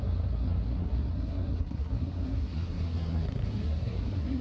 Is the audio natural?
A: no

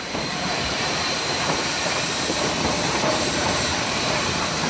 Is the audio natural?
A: no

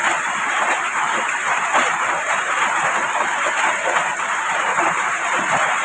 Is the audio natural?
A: no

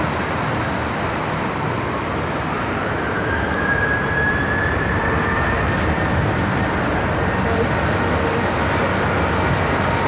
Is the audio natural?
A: yes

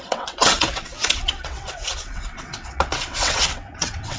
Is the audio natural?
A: no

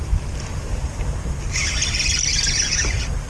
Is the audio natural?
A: yes